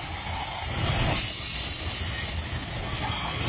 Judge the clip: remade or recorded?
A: recorded